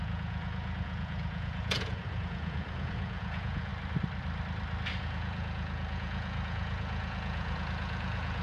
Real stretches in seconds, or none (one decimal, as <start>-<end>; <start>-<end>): 3.7-5.0